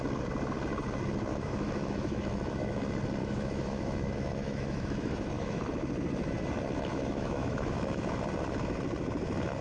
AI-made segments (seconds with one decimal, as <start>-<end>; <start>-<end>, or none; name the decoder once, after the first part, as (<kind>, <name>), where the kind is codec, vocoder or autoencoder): 1.3-2.8 (autoencoder, DAC-VAE); 3.2-5.6; 6.9-8.2